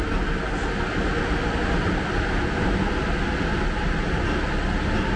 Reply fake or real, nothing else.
real